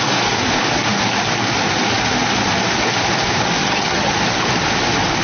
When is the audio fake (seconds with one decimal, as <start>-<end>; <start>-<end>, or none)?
3.6-4.1